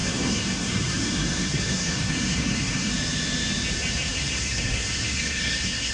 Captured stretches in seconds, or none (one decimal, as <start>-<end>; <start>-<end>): 2.9-4.1